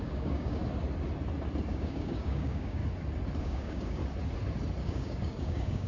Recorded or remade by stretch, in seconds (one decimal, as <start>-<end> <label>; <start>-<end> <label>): 0.0-0.6 remade; 0.6-1.7 recorded; 1.7-2.8 remade; 2.8-3.4 recorded; 3.4-4.0 remade; 4.0-4.8 recorded; 4.8-5.9 remade